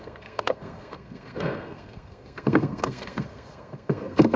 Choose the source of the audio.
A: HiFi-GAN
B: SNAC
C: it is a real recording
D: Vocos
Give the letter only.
B